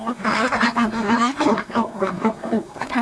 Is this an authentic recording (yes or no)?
no